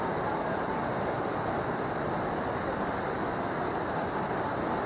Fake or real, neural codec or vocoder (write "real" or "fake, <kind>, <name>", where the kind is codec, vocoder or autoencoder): real